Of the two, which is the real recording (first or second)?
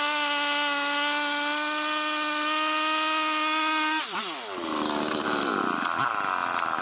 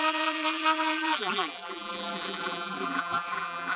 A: first